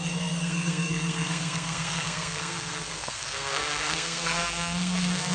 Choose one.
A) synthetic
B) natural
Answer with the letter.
A